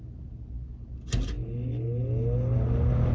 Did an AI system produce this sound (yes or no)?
no